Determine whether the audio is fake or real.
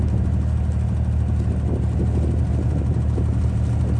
real